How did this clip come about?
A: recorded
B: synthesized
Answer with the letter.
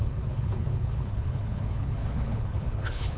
B